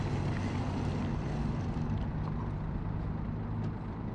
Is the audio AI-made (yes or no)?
no